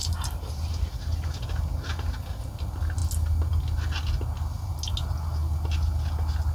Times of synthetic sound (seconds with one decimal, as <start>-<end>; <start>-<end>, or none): 0.0-0.7